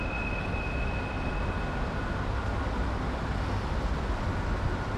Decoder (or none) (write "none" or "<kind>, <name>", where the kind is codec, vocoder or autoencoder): none